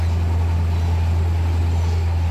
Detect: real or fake real